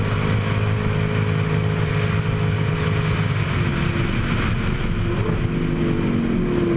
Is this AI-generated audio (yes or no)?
no